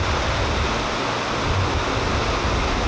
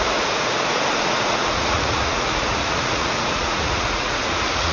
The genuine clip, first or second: first